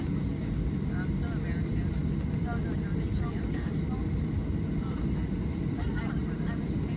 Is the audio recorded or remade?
recorded